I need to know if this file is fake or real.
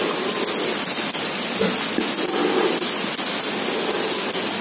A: real